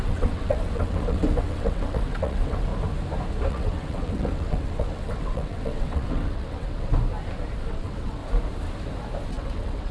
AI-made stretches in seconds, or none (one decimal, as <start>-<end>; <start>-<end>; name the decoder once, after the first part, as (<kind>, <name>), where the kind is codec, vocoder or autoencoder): 0.0-2.7 (vocoder, WaveNeXt); 3.5-6.9; 7.7-8.2; 9.3-9.9